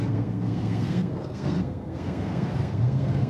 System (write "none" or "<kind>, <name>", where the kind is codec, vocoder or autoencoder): codec, SNAC